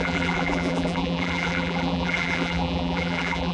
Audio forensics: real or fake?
fake